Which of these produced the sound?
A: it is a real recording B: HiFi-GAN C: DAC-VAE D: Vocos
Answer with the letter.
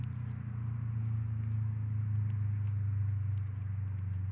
A